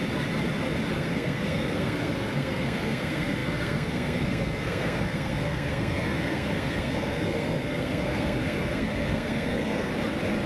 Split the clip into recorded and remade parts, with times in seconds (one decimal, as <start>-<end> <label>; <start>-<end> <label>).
0.0-0.9 recorded; 0.9-9.9 remade; 9.9-10.5 recorded